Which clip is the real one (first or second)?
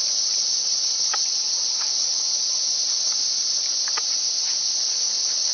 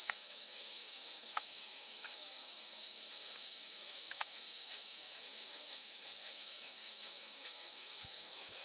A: first